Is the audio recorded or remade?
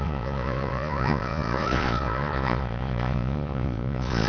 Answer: remade